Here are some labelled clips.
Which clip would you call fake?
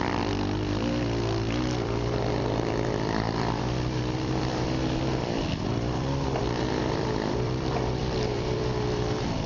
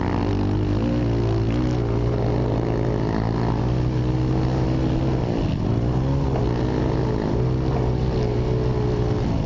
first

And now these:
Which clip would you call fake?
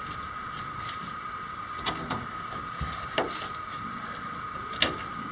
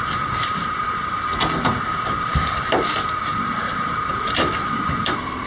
second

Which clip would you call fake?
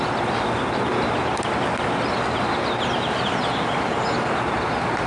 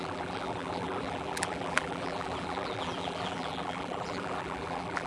second